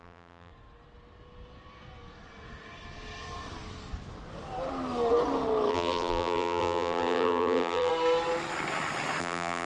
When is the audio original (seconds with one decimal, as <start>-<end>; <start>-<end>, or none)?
0.5-5.7; 7.9-9.2